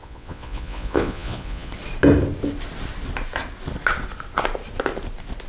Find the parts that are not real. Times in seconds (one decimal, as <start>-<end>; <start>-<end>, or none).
0.0-1.7